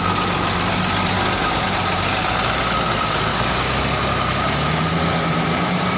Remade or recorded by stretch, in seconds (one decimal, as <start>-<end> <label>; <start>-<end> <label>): 0.0-3.3 recorded; 3.3-3.8 remade; 3.8-6.0 recorded